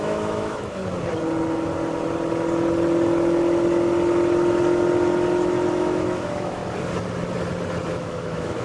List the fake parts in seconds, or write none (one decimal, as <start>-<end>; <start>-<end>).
0.0-0.8; 5.7-6.6; 7.9-8.6